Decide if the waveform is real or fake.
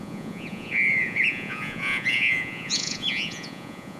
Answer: fake